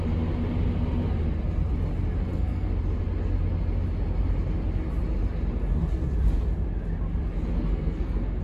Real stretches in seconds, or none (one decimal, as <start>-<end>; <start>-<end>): 0.0-2.2; 2.7-7.7